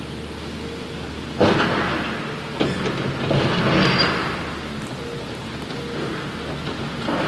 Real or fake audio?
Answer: real